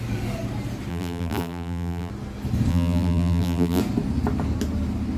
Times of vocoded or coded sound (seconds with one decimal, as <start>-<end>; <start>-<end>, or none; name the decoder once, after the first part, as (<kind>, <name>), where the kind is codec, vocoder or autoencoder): 0.9-2.1 (vocoder, BigVGAN v2); 2.7-3.8